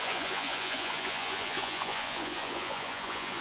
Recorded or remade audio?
remade